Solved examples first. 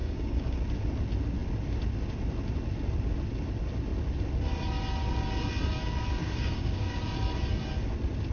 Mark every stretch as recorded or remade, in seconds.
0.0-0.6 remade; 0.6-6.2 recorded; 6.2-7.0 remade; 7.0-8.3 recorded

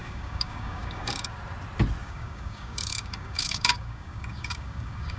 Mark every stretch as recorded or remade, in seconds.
0.0-1.4 remade; 1.4-2.0 recorded; 2.0-5.2 remade